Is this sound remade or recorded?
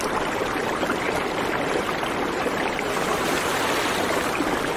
remade